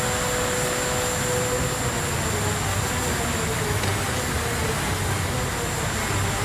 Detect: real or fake real